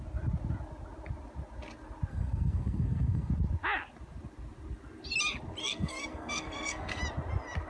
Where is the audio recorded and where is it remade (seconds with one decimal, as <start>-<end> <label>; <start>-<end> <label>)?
0.0-2.1 recorded; 2.1-3.3 remade; 3.3-5.6 recorded; 5.6-7.0 remade; 7.0-7.7 recorded